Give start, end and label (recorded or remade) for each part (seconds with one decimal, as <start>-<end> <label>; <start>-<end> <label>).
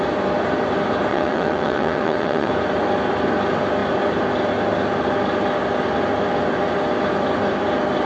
0.0-1.1 recorded; 1.1-2.5 remade; 2.5-8.1 recorded